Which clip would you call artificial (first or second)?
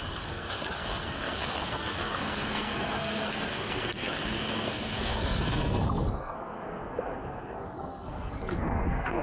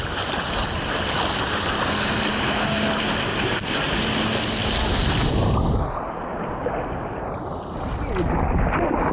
first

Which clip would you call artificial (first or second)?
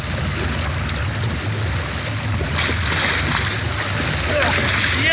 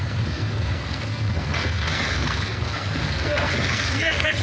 second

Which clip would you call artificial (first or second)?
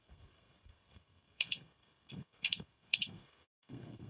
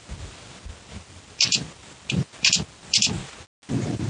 first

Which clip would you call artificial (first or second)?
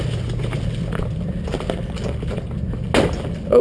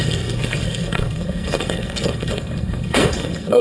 second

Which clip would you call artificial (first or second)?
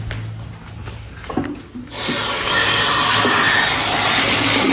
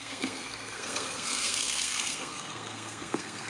second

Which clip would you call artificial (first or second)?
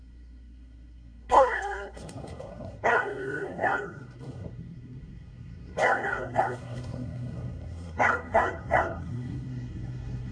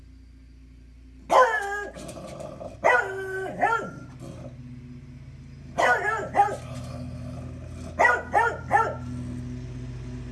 first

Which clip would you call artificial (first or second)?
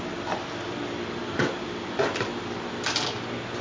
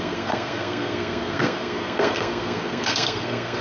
second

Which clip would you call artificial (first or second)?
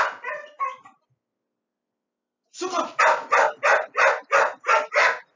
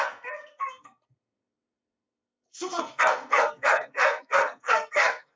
second